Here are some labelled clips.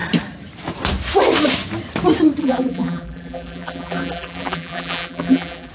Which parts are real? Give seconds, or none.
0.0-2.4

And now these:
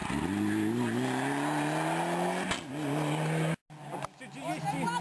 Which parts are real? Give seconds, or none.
0.0-5.0